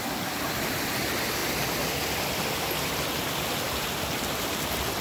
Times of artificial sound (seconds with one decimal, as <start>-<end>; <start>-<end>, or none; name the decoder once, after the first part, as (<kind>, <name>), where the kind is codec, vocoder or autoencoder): none